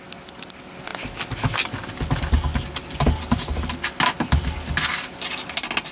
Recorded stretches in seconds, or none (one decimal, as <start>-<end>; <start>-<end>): 0.0-5.9